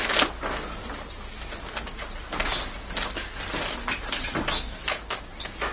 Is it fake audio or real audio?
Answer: real